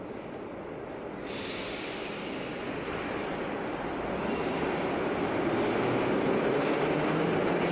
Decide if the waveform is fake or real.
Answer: real